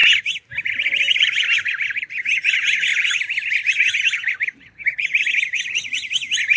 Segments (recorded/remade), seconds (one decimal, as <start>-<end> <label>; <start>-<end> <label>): 0.0-6.6 recorded